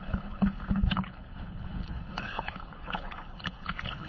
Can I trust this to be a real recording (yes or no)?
no